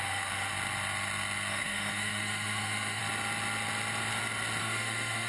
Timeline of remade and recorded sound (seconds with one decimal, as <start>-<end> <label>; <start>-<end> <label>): 0.0-0.5 remade; 0.5-1.5 recorded; 1.5-3.0 remade; 3.0-4.6 recorded; 4.6-5.3 remade